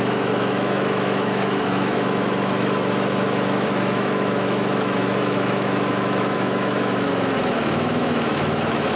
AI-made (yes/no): yes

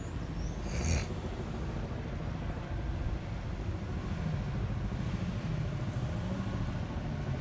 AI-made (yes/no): no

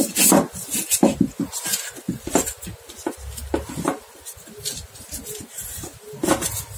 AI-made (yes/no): no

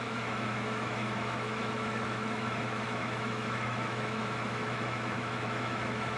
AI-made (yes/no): yes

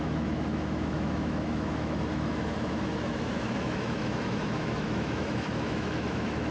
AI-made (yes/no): yes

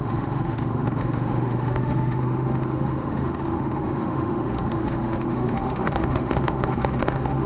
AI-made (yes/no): yes